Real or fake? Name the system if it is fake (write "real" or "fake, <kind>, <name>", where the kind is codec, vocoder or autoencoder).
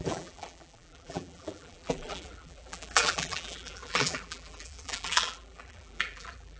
fake, vocoder, BigVGAN v2